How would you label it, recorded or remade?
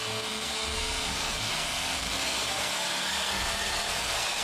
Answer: remade